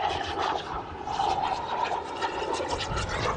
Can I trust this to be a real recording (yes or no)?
yes